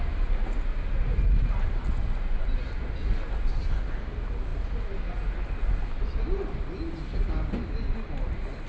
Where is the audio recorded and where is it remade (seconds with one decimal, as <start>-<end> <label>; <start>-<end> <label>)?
0.0-8.7 recorded